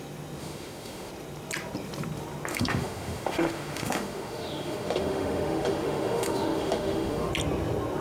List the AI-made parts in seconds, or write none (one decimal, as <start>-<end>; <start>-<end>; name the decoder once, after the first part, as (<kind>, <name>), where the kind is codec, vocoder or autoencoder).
0.4-1.1 (autoencoder, DAC-VAE); 2.5-7.3